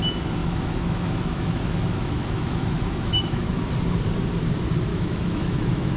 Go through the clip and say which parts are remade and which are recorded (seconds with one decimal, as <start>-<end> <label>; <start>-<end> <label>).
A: 0.0-0.4 recorded; 0.4-3.7 remade; 3.7-4.9 recorded; 4.9-6.0 remade